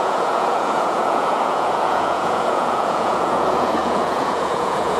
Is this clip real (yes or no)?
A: no